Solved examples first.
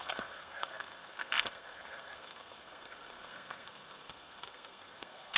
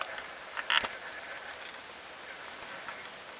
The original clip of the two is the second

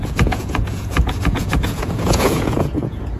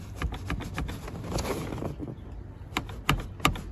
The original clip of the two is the second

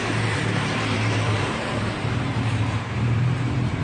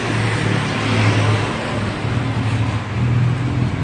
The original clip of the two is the second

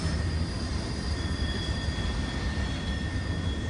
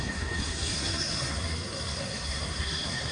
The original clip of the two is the first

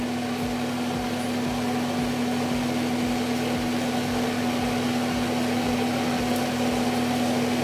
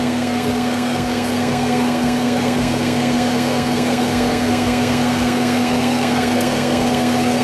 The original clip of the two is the first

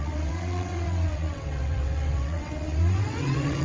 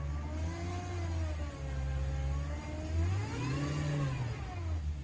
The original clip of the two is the second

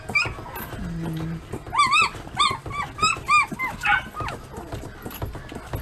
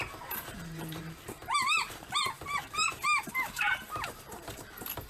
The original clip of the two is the first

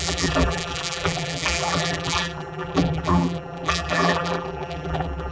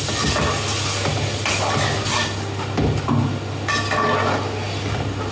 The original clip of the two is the second